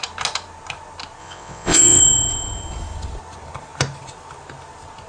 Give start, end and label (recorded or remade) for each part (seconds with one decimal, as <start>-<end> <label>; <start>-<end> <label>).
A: 0.0-1.2 recorded; 1.2-2.0 remade; 2.0-5.1 recorded